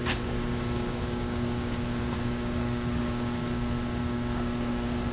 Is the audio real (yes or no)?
no